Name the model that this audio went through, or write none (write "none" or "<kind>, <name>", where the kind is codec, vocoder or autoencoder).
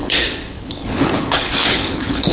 codec, HILCodec